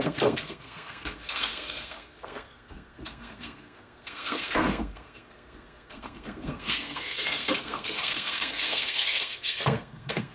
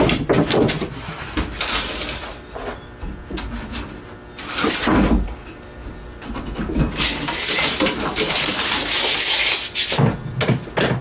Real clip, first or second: second